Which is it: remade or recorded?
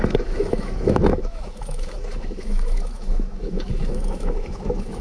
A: remade